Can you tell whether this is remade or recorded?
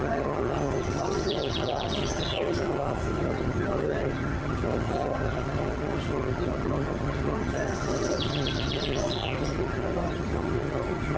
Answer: remade